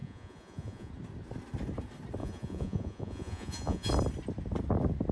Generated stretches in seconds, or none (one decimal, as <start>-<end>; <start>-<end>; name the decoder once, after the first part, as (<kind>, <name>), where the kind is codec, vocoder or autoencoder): 0.0-0.9 (vocoder, Vocos); 2.2-3.9